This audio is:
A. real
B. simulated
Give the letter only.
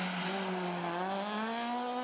A